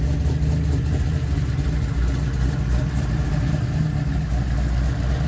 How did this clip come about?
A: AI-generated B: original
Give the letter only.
B